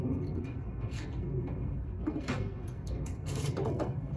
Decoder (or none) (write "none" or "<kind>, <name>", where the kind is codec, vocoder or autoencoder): codec, SNAC